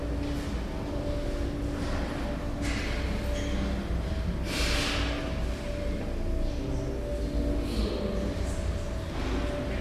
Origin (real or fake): real